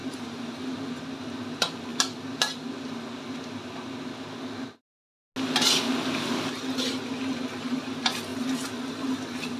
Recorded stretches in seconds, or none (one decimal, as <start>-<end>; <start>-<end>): 1.0-9.6